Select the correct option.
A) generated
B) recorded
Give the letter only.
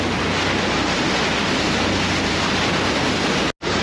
B